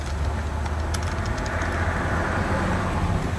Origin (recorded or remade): recorded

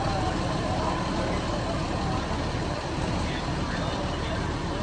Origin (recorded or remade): recorded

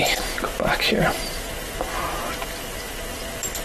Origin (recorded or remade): remade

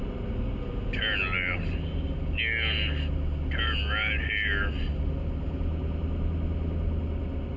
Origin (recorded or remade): recorded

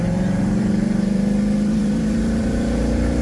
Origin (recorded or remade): remade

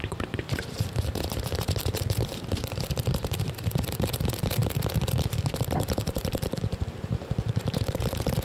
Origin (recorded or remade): remade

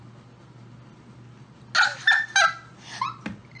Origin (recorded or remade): recorded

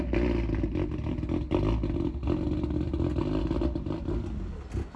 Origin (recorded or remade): recorded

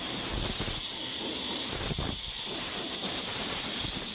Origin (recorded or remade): remade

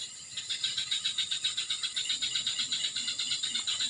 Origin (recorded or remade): remade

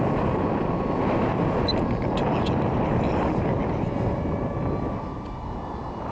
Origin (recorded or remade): remade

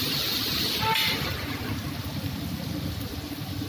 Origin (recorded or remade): remade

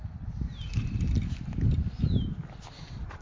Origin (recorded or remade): recorded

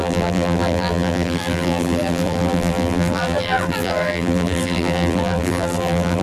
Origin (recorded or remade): remade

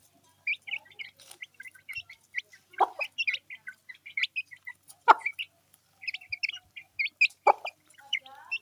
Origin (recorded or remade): recorded